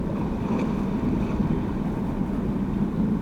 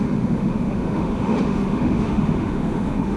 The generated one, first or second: second